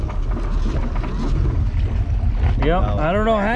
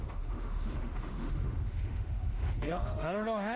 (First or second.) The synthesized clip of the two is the second